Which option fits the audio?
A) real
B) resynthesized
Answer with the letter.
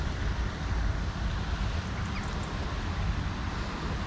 A